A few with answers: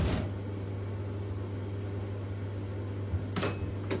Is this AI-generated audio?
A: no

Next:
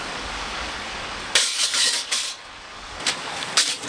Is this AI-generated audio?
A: yes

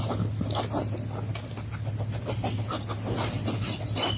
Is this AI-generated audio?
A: no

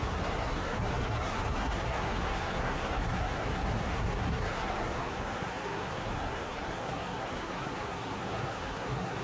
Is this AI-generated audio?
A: yes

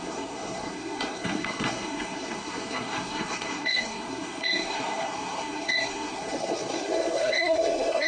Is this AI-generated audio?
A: yes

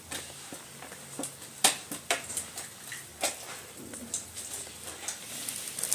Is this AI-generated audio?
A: no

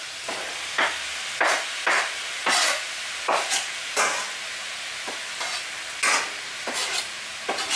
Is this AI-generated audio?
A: no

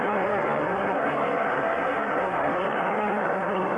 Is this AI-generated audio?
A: yes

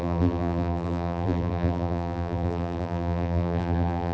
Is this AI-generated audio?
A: yes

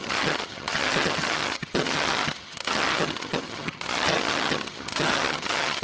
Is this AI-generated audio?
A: yes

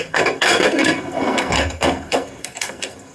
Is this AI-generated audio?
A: yes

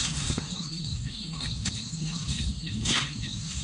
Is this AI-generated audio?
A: yes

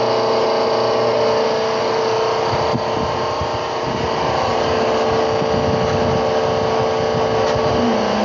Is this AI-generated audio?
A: no